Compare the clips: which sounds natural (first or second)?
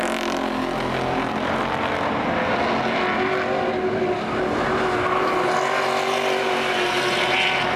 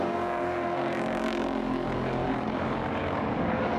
first